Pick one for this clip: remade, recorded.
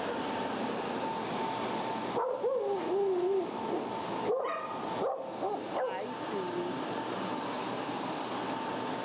recorded